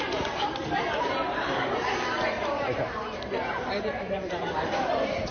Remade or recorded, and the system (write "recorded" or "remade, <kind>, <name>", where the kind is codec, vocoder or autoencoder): remade, vocoder, BigVGAN v2